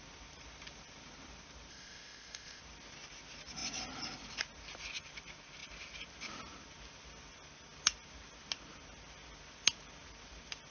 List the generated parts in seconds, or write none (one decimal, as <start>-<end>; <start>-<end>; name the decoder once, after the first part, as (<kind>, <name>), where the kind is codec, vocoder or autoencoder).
1.7-2.6 (codec, ZipCodec)